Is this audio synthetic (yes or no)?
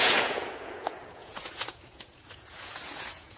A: yes